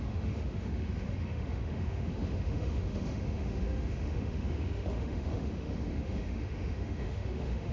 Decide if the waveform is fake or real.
fake